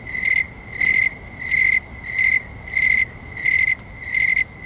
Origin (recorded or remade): recorded